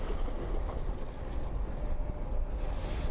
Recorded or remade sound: recorded